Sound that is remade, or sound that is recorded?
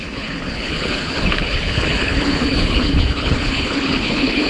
remade